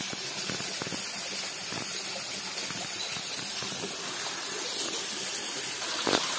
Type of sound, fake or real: real